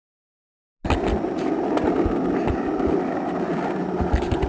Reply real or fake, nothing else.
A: real